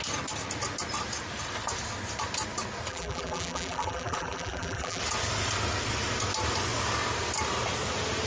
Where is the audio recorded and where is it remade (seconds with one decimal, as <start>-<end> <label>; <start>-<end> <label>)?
0.0-2.9 recorded; 2.9-5.0 remade; 5.0-8.3 recorded